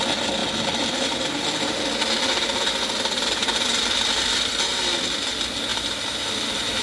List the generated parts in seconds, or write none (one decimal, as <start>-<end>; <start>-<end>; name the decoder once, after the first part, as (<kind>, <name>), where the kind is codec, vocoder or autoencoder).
0.4-1.3 (vocoder, BigVGAN v2); 3.7-4.5; 5.7-6.8